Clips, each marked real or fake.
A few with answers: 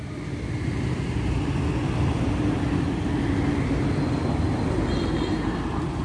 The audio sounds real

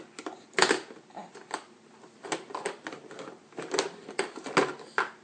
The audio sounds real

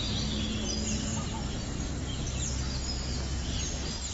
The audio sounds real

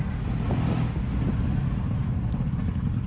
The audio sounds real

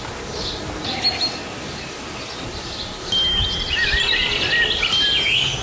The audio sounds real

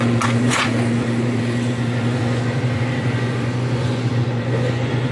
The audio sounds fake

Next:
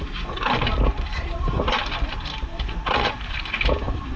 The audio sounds fake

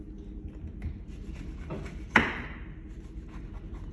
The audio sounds real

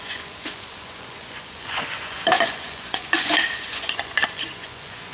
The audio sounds fake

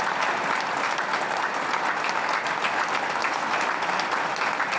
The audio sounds real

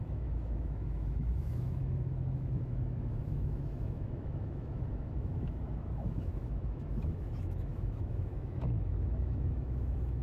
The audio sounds fake